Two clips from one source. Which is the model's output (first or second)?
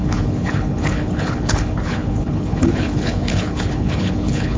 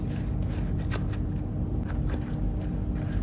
first